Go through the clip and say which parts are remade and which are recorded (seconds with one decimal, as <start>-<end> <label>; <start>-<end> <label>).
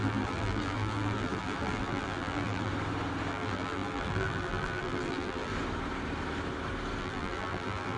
0.0-2.7 remade; 2.7-3.3 recorded; 3.3-5.5 remade; 5.5-7.0 recorded; 7.0-8.0 remade